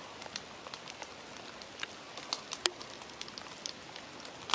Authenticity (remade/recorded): recorded